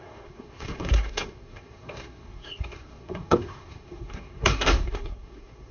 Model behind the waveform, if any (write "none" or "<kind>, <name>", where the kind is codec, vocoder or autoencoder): codec, SNAC